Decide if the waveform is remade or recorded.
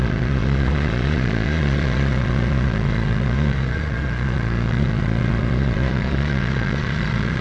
remade